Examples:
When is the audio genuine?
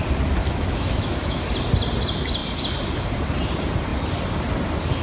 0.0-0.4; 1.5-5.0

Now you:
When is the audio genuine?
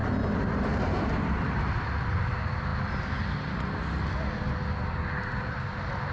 0.0-6.1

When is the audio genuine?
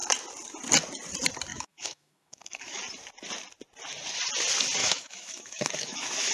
0.0-1.5; 2.8-4.8